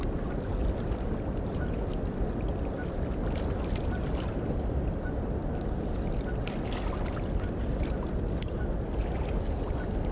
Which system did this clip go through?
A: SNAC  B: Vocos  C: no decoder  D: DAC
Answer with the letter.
C